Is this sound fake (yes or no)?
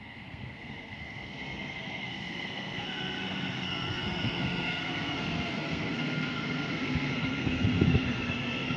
yes